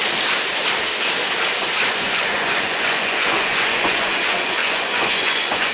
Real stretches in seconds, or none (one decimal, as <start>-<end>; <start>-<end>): 0.0-1.9